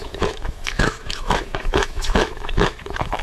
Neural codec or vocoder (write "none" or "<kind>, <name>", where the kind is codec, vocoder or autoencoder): autoencoder, DAC-VAE